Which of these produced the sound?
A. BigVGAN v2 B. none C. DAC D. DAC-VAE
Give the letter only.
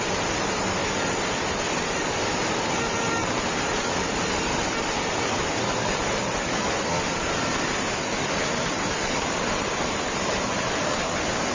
B